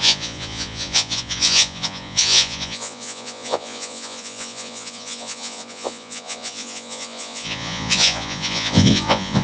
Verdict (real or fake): fake